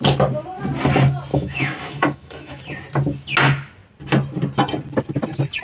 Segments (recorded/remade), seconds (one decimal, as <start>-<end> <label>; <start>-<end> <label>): 0.0-1.3 recorded; 1.3-2.6 remade; 2.6-5.6 recorded